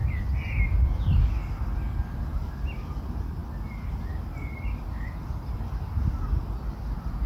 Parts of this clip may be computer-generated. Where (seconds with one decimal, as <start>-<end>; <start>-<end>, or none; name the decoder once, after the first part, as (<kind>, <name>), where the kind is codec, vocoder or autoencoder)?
none